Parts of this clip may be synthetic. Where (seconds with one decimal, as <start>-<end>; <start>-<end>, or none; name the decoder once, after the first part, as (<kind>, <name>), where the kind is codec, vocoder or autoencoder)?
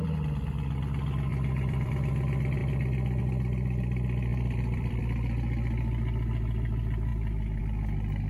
1.3-1.9 (vocoder, BigVGAN v2); 4.3-5.0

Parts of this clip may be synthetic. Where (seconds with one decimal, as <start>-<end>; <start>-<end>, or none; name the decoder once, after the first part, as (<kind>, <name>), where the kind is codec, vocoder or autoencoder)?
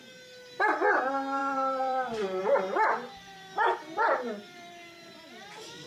1.4-2.4 (vocoder, BigVGAN v2); 2.9-5.4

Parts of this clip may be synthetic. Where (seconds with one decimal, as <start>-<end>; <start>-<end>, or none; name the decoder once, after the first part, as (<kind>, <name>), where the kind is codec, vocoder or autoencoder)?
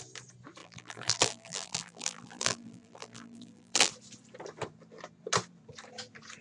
0.6-3.9 (vocoder, BigVGAN v2)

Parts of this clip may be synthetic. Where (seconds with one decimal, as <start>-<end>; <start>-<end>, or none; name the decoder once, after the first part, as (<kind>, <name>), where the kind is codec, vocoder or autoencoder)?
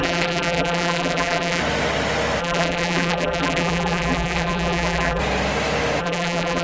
0.0-1.6 (vocoder, BigVGAN v2); 2.4-5.2; 6.0-6.6